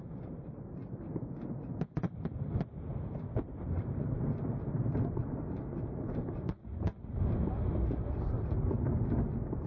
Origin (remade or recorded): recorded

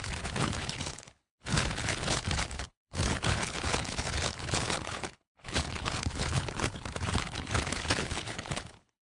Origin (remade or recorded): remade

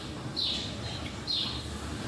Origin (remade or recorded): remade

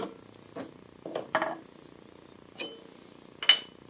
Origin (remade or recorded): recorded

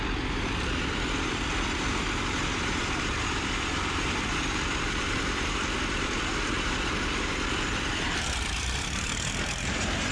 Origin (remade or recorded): remade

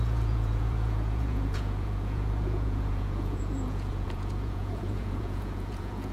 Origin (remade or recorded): remade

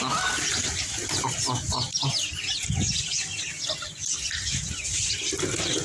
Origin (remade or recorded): recorded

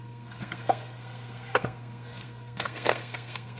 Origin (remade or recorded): remade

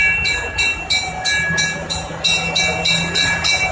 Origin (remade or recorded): recorded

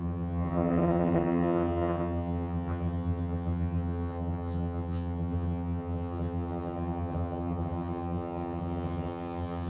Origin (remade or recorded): remade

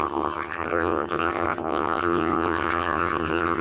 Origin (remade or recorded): remade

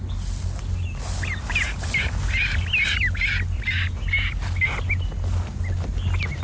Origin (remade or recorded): recorded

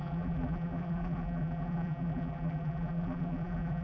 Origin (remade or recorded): remade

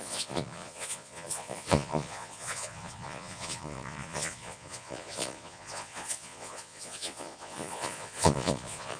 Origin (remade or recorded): remade